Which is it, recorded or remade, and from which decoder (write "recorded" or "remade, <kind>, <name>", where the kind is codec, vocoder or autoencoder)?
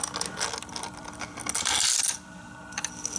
recorded